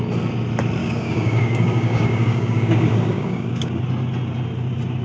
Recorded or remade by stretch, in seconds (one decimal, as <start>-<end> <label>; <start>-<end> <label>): 0.0-0.8 recorded; 0.8-3.8 remade; 3.8-5.0 recorded